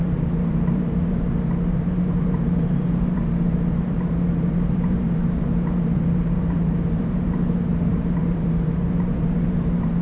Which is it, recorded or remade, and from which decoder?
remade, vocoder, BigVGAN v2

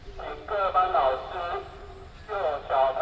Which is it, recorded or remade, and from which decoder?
recorded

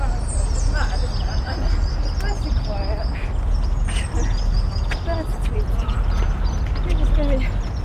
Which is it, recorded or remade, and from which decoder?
recorded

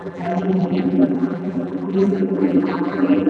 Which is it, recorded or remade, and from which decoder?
remade, vocoder, BigVGAN v2